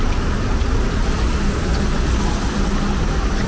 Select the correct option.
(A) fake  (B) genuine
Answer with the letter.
A